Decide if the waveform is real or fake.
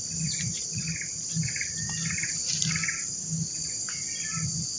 fake